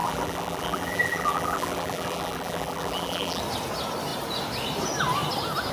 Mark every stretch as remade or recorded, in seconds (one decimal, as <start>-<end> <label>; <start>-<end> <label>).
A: 0.0-3.4 remade; 3.4-5.7 recorded